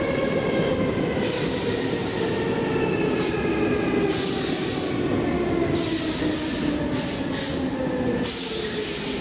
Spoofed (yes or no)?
no